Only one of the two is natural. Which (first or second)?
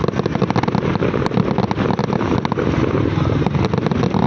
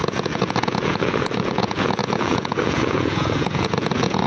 first